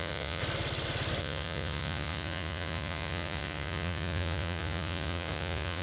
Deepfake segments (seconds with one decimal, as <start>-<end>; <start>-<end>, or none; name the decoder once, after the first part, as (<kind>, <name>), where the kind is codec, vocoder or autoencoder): 0.0-0.4 (vocoder, Vocos); 1.2-5.8